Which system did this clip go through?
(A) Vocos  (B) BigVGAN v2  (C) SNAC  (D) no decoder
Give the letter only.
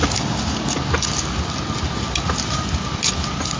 D